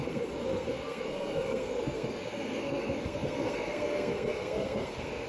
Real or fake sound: fake